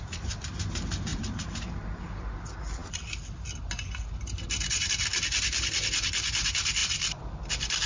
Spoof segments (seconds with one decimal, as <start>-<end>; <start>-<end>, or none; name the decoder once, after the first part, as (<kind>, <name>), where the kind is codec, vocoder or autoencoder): 1.1-1.7 (vocoder, BigVGAN v2)